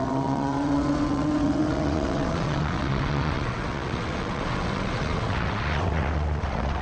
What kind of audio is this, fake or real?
fake